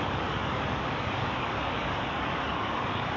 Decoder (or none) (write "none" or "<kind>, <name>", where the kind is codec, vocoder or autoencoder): codec, DAC